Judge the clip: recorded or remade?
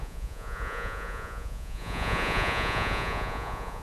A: remade